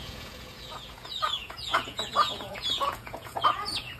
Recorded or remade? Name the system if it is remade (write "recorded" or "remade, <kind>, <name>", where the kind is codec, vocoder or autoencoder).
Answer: remade, vocoder, Vocos